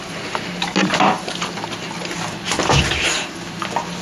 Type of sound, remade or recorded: recorded